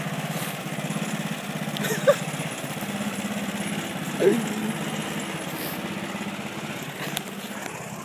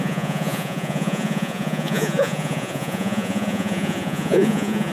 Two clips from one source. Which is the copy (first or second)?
second